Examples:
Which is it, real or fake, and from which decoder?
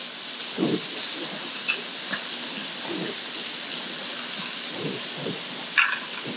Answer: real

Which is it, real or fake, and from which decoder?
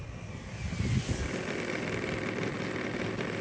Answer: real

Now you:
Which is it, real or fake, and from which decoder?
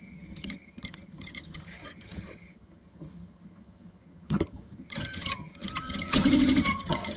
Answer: fake, vocoder, HiFi-GAN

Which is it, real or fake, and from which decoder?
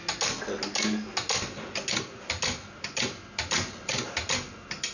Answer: real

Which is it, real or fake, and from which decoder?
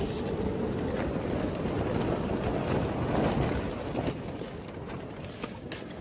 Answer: real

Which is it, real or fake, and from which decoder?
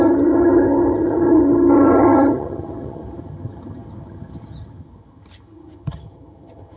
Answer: fake, vocoder, HiFi-GAN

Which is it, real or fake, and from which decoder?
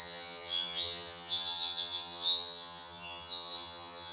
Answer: fake, vocoder, HiFi-GAN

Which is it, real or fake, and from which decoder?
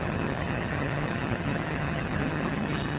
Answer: fake, vocoder, HiFi-GAN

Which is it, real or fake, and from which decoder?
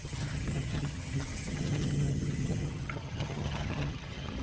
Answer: fake, vocoder, HiFi-GAN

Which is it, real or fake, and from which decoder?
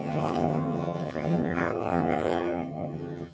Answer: fake, vocoder, HiFi-GAN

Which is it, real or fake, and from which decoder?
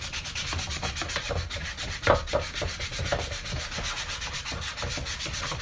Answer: real